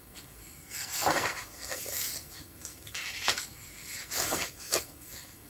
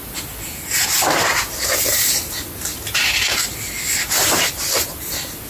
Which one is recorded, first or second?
second